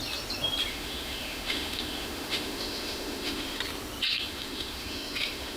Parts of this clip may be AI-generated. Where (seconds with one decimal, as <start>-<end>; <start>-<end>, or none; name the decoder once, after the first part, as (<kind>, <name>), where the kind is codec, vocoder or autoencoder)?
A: 0.7-3.6 (autoencoder, DAC-VAE); 4.1-5.6